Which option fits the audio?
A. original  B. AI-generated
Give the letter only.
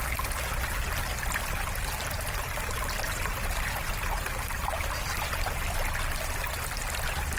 A